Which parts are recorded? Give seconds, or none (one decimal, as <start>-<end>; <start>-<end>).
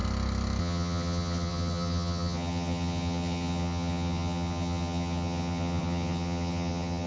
0.0-0.6